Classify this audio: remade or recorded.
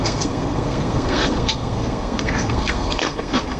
remade